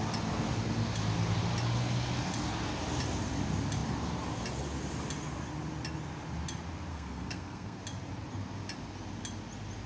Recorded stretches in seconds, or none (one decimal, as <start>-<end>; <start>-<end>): 0.0-6.9; 7.8-9.9